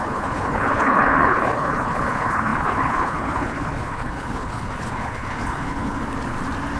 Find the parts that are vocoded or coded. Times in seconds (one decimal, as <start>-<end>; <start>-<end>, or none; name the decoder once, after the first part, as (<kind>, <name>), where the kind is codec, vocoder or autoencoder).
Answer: 0.0-6.0 (codec, HILCodec)